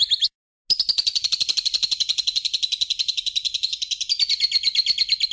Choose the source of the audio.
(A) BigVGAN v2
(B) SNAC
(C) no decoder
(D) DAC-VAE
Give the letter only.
C